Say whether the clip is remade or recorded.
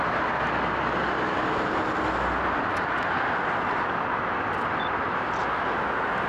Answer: recorded